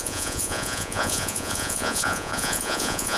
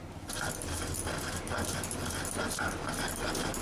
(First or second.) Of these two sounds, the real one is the second